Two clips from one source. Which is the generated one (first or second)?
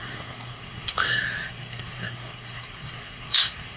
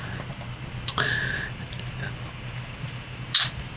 first